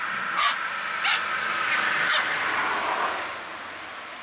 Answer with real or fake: real